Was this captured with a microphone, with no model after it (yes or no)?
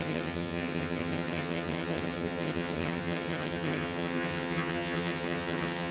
no